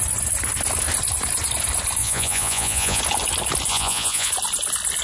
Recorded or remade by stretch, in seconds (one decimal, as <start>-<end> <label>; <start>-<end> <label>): 0.0-2.0 recorded; 2.0-3.0 remade; 3.0-3.7 recorded; 3.7-4.3 remade; 4.3-5.0 recorded